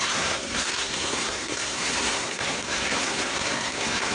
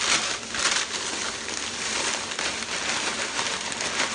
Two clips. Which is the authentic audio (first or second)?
second